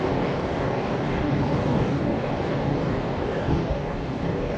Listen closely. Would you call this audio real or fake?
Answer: fake